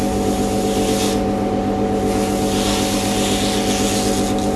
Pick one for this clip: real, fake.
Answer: real